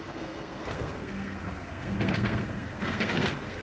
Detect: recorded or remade remade